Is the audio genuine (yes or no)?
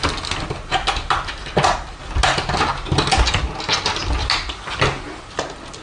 yes